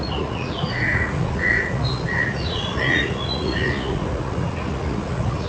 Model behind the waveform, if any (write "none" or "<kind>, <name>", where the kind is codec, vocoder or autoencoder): vocoder, Vocos